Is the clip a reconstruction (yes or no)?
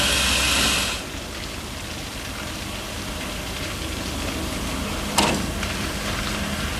no